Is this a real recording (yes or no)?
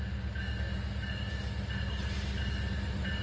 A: yes